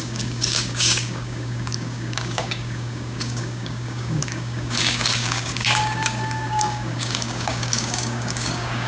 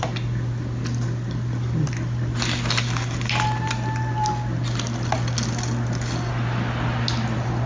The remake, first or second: first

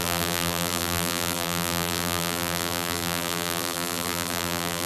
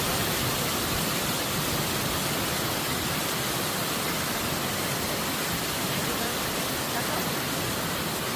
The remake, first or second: first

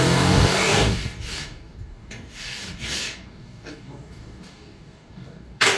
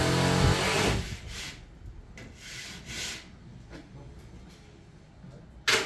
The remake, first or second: first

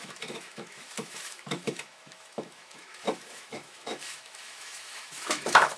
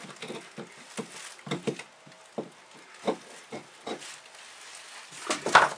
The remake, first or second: first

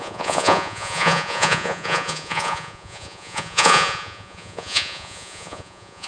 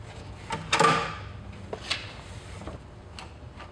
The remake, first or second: first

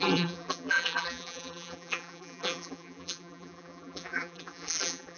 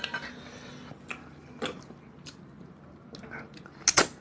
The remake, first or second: first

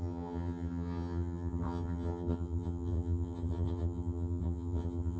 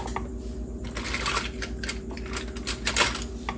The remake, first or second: first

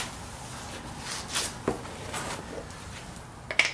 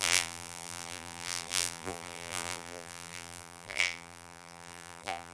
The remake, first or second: second